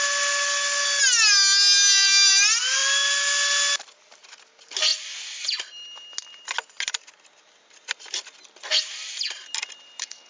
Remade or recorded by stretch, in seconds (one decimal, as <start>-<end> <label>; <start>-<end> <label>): 0.0-10.3 recorded